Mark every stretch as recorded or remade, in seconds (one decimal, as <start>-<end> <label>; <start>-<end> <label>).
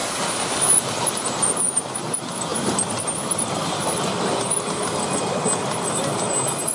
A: 0.0-6.7 recorded